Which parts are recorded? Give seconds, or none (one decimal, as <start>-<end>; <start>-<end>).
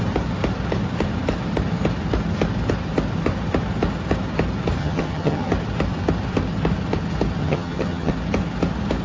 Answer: 0.0-4.8; 5.5-7.4; 8.1-9.0